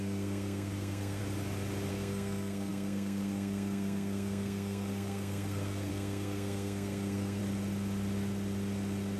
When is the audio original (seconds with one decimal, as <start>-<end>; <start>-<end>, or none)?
1.2-1.9; 7.4-9.2